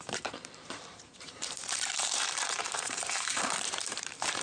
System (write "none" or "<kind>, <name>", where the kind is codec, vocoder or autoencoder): vocoder, BigVGAN v2